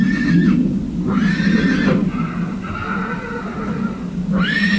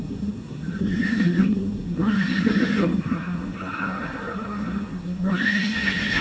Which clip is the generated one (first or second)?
second